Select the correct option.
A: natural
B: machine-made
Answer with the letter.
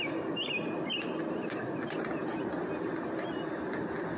A